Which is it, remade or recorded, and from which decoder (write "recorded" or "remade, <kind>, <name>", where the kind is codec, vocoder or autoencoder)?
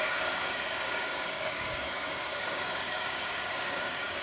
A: remade, codec, DAC